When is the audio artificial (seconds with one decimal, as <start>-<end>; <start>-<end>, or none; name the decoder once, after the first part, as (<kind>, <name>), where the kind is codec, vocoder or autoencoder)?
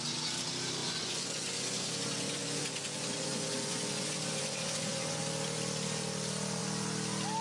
0.8-5.2 (vocoder, Vocos)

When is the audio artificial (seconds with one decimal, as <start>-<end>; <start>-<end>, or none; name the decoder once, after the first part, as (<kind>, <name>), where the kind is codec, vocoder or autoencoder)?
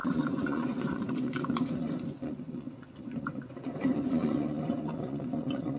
0.0-5.8 (vocoder, Vocos)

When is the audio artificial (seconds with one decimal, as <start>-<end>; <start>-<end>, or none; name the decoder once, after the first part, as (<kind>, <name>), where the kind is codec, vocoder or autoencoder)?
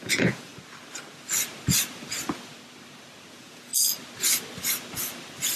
0.0-0.5 (vocoder, Vocos); 3.3-3.7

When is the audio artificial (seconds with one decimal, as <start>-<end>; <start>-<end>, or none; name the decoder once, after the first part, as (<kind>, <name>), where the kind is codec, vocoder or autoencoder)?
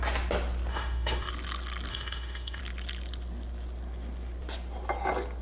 0.7-1.3 (autoencoder, DAC-VAE); 1.9-2.6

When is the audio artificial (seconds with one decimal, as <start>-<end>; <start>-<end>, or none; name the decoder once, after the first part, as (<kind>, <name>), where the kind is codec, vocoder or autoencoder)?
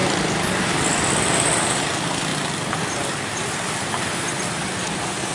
none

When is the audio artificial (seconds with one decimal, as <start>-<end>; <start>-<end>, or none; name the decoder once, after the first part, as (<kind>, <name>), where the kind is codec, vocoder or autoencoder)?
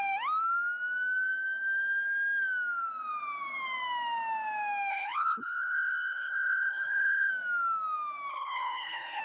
4.9-7.3 (codec, HILCodec); 8.3-9.2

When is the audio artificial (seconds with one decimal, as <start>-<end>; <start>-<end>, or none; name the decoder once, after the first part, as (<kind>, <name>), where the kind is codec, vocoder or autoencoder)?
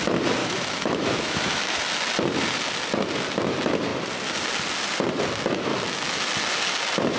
0.4-1.8 (autoencoder, DAC-VAE); 5.7-6.3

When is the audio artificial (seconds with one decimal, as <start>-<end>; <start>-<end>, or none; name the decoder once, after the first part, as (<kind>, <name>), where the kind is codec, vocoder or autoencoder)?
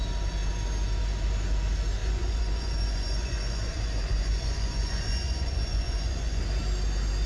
2.0-6.4 (vocoder, Vocos)